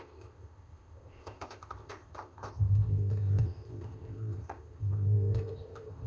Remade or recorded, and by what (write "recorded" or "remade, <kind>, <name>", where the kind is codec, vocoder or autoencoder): remade, codec, ZipCodec